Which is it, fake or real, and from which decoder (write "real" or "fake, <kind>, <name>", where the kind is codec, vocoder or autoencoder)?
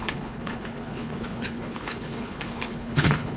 fake, codec, HILCodec